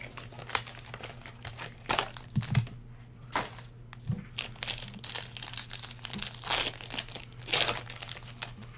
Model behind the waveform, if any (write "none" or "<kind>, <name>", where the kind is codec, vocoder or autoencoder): none